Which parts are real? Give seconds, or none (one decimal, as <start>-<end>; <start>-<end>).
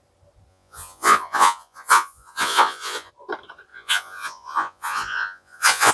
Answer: 0.0-0.5; 3.1-3.7